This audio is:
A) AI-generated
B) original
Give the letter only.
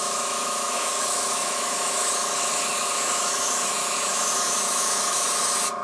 A